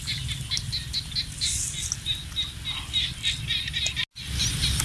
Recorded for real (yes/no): yes